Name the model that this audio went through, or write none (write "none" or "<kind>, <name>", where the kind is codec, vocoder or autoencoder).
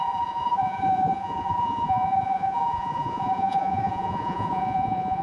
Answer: vocoder, Vocos